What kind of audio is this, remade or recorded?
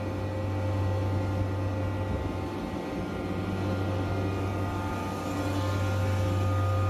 recorded